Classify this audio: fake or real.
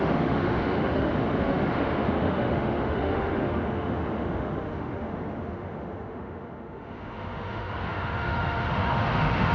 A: fake